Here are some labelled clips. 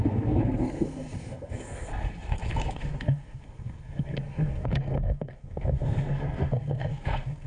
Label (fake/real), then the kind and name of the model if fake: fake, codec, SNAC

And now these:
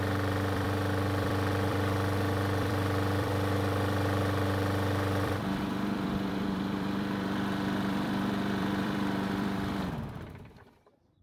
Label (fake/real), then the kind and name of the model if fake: fake, vocoder, BigVGAN v2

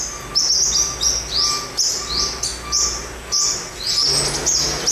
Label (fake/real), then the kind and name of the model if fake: real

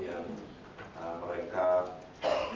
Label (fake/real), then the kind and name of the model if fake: real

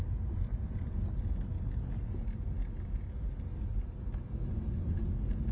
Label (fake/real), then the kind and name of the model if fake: real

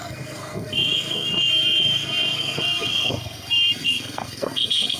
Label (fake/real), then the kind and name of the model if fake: fake, codec, SNAC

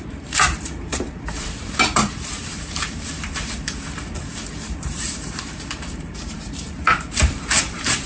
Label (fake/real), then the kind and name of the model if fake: fake, vocoder, BigVGAN v2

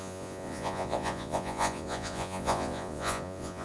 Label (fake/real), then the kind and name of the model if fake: fake, vocoder, Vocos